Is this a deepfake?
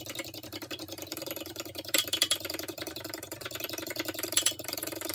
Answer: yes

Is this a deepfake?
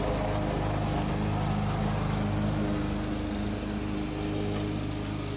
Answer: no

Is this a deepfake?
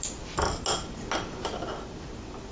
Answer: no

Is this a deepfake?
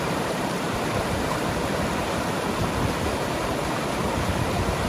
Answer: yes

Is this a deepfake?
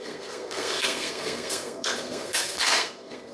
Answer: yes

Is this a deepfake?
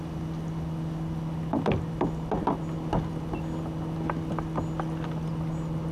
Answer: no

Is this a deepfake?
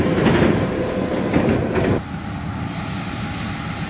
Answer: yes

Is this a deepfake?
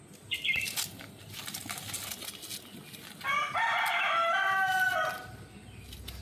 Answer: no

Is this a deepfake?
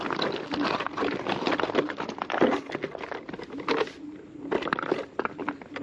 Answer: no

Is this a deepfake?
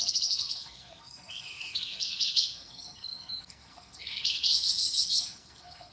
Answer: yes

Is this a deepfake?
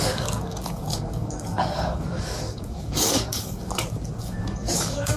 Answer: yes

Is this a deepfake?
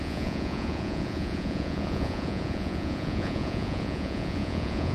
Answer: yes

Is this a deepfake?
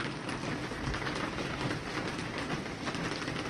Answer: no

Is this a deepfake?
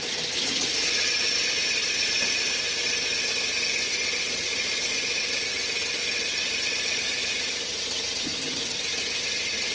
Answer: no